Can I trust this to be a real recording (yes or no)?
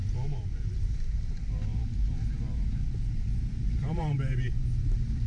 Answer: no